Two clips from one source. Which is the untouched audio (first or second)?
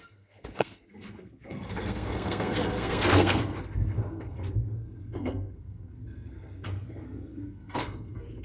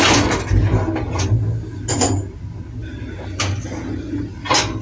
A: second